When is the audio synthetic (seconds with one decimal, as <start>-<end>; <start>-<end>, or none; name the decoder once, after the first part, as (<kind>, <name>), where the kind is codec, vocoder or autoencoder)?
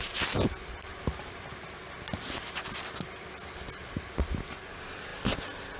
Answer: none